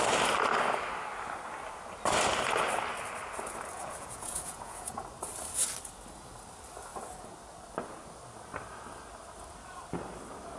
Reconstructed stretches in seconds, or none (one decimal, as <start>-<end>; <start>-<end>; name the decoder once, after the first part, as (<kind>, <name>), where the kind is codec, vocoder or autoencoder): 3.7-4.9 (vocoder, Vocos)

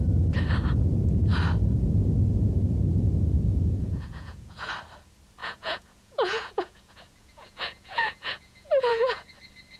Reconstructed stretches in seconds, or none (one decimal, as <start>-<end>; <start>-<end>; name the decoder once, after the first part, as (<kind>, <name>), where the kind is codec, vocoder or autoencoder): 3.5-4.7 (vocoder, Vocos); 5.4-9.3

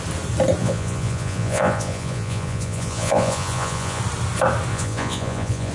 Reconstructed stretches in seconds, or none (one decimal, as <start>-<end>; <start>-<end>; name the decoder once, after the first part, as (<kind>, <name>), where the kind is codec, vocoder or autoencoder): 0.6-4.0 (vocoder, Vocos); 4.7-5.7

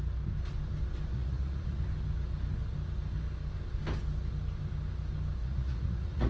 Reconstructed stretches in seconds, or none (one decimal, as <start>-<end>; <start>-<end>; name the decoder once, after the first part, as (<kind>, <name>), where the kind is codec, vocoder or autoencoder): 1.1-1.8 (vocoder, Vocos); 5.4-6.3

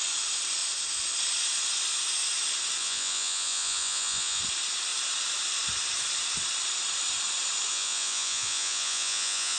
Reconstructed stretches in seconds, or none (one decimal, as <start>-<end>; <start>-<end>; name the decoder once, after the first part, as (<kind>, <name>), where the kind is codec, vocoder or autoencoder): 2.8-4.4 (vocoder, Vocos); 7.7-9.6

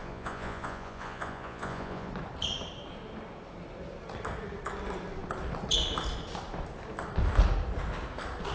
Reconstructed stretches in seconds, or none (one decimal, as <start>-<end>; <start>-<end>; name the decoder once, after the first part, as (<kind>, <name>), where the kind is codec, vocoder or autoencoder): 0.0-2.1 (vocoder, Vocos)

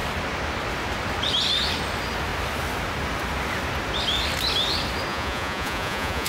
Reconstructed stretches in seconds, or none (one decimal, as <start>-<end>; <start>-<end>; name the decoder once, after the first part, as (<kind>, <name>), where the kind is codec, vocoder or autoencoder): 5.1-6.3 (vocoder, Vocos)